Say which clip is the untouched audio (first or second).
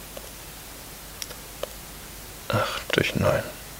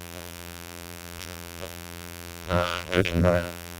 first